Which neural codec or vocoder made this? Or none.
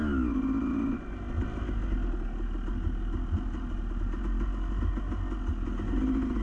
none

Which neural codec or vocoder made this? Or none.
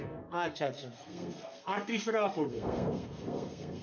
codec, SNAC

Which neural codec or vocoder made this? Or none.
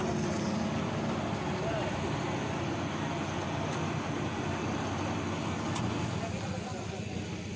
none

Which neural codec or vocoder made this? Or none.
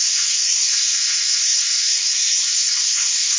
codec, SNAC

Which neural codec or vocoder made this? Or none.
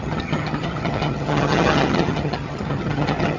vocoder, HiFi-GAN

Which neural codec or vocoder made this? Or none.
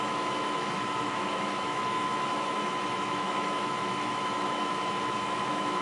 autoencoder, DAC-VAE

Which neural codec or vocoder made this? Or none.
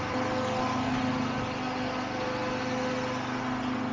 none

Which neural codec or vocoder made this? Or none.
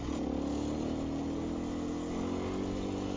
none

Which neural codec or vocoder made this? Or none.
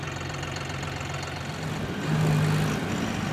none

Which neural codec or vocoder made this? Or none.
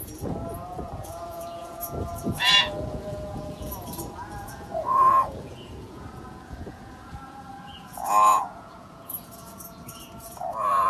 vocoder, Vocos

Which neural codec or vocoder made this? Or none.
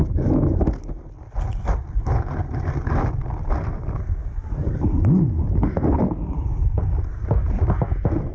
none